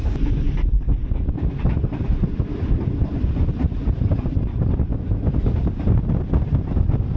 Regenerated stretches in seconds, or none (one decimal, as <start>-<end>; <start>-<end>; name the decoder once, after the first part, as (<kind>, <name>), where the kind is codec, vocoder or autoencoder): none